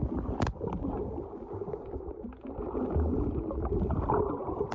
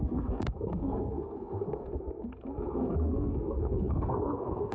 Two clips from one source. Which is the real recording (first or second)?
first